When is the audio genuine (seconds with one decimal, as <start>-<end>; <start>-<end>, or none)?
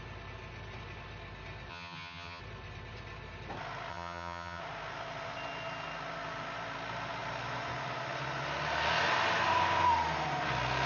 0.0-1.7; 2.4-3.9; 4.6-10.9